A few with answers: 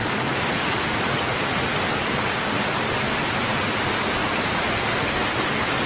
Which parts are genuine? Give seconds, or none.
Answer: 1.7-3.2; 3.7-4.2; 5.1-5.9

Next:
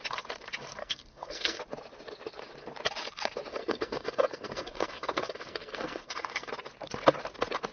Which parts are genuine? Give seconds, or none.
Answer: 0.0-0.8; 1.6-3.5; 6.5-7.7

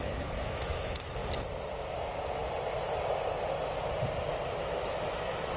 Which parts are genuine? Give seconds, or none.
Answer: 1.2-4.6

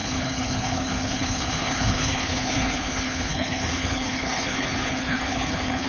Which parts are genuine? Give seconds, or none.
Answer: none